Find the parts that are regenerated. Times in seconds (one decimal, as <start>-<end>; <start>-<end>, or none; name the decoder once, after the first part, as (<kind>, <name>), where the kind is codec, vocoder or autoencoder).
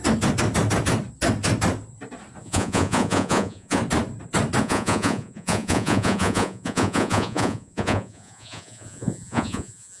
2.4-3.8 (vocoder, Vocos); 4.6-10.0